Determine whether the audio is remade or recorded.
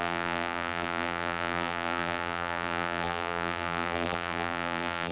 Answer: remade